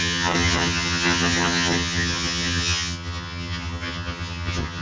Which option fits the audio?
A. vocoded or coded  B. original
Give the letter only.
A